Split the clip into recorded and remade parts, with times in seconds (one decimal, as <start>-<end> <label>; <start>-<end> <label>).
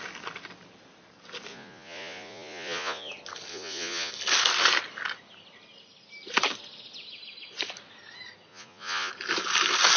0.0-1.5 recorded; 1.5-3.1 remade; 3.1-3.5 recorded; 3.5-4.1 remade; 4.1-8.5 recorded; 8.5-9.1 remade; 9.1-10.0 recorded